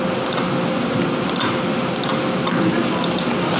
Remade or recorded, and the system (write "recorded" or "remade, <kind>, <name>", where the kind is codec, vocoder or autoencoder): recorded